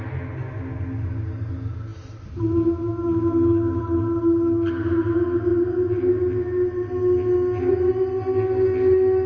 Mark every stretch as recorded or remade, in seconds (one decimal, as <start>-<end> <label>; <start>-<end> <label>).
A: 0.0-9.3 recorded